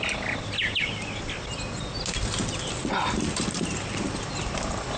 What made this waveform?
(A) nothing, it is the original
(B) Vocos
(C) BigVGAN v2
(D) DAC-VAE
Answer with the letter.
A